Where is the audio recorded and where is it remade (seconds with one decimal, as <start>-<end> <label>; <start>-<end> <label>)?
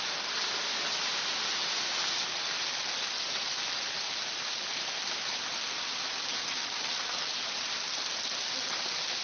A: 0.0-9.2 recorded